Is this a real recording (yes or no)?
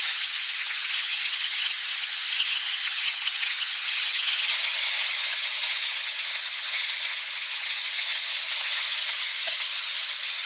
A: no